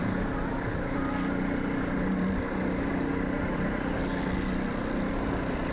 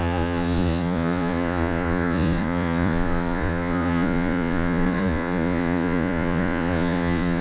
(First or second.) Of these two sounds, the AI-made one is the second